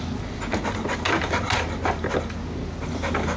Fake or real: real